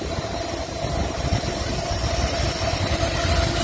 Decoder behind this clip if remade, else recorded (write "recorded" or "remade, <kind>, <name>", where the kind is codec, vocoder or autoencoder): remade, vocoder, BigVGAN v2